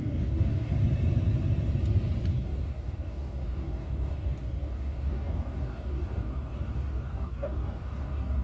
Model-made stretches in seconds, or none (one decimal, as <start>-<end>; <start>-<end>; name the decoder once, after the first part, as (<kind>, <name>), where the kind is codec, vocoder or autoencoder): 0.0-0.7 (codec, DAC); 2.3-8.4